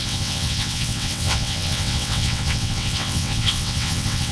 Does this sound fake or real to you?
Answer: fake